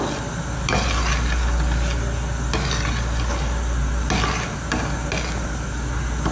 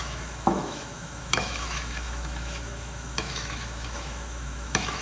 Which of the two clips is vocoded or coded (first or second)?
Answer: second